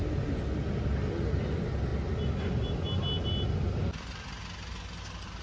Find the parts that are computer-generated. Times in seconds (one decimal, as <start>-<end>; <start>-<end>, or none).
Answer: none